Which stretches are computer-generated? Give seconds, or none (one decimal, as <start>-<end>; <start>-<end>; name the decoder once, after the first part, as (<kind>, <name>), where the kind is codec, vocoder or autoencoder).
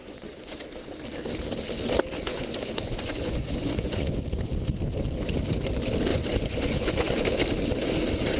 0.0-0.6 (vocoder, Vocos); 2.3-4.2; 6.1-7.2